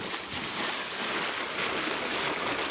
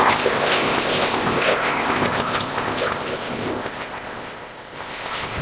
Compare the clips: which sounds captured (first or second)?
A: first